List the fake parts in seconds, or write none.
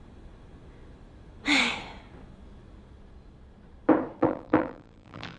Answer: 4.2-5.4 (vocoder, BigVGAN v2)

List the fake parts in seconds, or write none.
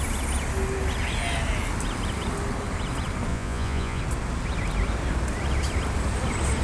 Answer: 3.3-4.0 (vocoder, Vocos)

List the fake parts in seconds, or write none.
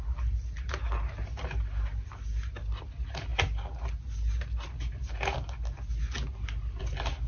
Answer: none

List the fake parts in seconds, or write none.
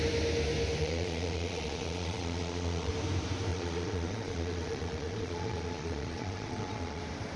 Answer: 0.8-2.9 (vocoder, Vocos); 3.5-7.0